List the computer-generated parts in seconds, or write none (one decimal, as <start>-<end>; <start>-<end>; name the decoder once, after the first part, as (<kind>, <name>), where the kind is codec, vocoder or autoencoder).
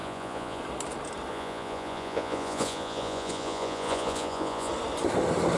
0.0-0.6 (vocoder, Vocos); 1.3-4.7